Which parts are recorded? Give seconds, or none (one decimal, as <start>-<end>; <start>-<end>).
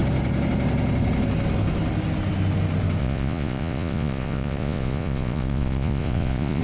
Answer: 0.0-3.0